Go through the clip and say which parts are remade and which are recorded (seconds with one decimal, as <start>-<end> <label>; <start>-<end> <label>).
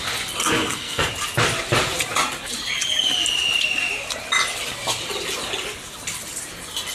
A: 0.0-0.4 recorded; 0.4-1.1 remade; 1.1-6.9 recorded